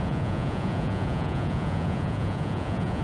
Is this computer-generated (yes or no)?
yes